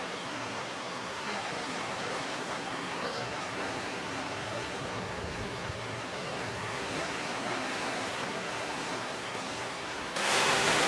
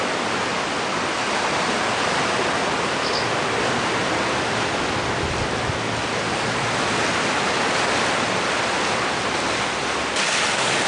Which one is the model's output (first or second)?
first